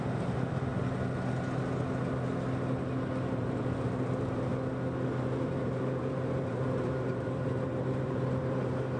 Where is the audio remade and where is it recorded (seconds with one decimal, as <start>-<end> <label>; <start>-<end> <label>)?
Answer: 0.0-0.7 remade; 0.7-3.3 recorded; 3.3-4.5 remade; 4.5-5.2 recorded; 5.2-9.0 remade